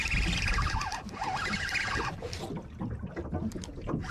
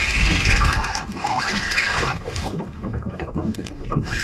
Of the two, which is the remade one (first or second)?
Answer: second